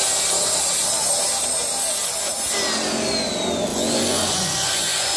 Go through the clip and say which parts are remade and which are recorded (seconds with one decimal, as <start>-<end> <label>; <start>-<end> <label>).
0.0-3.7 recorded; 3.7-5.2 remade